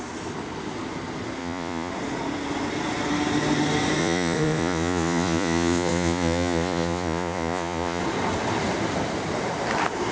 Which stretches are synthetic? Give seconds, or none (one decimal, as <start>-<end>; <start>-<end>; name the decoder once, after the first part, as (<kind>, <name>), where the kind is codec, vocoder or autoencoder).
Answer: 1.4-1.9 (vocoder, Vocos); 4.0-8.0